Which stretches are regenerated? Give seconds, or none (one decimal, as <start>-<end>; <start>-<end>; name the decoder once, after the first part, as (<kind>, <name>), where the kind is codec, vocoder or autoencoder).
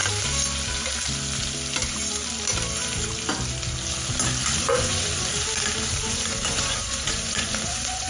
4.6-5.3 (vocoder, Vocos); 6.1-8.1